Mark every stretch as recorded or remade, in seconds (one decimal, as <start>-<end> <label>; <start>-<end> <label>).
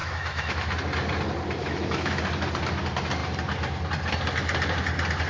0.0-0.7 remade; 0.7-1.6 recorded; 1.6-2.2 remade; 2.2-5.3 recorded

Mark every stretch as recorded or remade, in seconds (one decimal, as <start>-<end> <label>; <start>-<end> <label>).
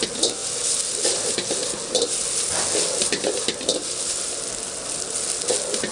0.0-0.4 recorded; 0.4-1.3 remade; 1.3-3.0 recorded; 3.0-5.5 remade; 5.5-5.9 recorded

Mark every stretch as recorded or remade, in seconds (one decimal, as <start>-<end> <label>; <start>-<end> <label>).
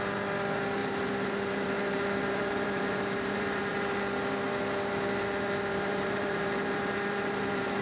0.0-0.8 recorded; 0.8-3.7 remade; 3.7-5.7 recorded; 5.7-7.8 remade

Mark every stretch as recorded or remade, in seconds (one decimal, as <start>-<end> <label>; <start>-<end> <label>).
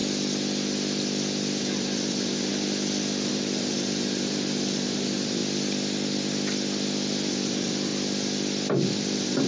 0.0-1.6 recorded; 1.6-2.5 remade; 2.5-3.3 recorded; 3.3-5.4 remade; 5.4-7.3 recorded; 7.3-7.9 remade; 7.9-9.0 recorded; 9.0-9.5 remade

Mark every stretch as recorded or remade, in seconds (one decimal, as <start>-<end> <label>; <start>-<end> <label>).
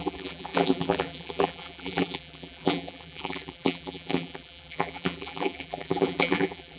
0.0-6.8 remade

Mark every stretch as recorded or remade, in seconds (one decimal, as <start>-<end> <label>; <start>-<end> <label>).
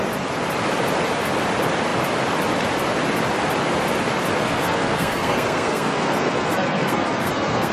0.0-4.4 recorded; 4.4-7.7 remade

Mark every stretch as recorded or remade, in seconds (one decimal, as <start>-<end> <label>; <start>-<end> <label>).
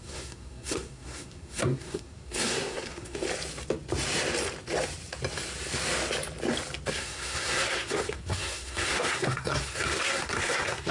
0.0-3.2 remade; 3.2-6.9 recorded; 6.9-10.9 remade